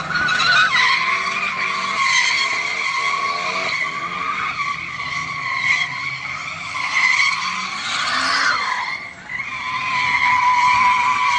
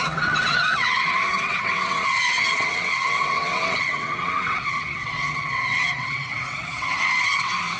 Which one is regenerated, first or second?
second